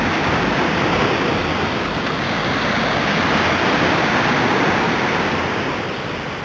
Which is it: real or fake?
real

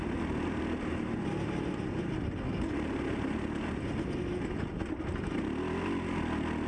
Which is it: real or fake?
real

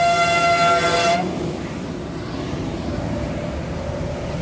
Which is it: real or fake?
real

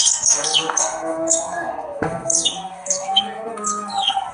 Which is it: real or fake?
fake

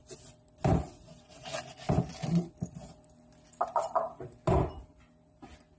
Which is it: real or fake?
real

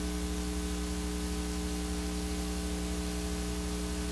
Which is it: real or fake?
real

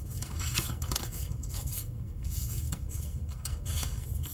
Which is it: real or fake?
fake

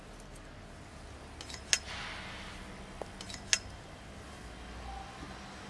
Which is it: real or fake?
real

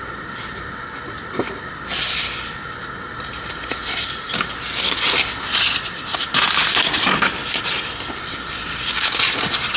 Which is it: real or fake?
real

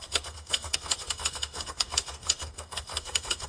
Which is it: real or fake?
fake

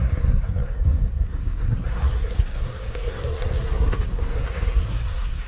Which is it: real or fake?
fake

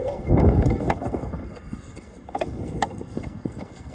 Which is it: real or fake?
fake